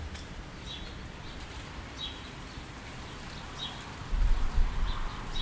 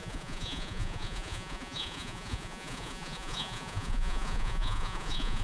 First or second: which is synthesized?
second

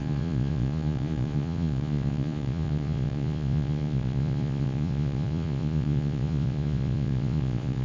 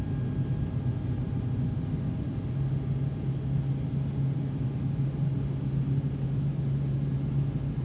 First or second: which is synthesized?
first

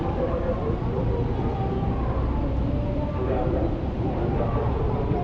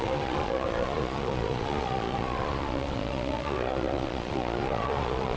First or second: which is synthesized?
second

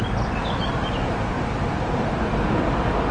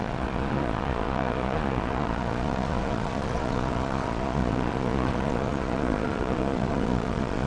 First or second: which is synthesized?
second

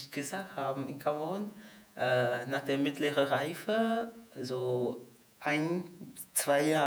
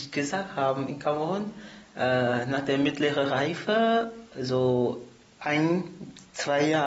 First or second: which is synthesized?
first